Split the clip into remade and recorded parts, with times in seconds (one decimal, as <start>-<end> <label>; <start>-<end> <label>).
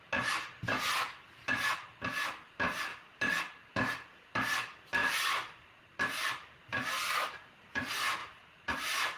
0.0-2.9 recorded; 2.9-3.4 remade; 3.4-8.2 recorded; 8.2-9.2 remade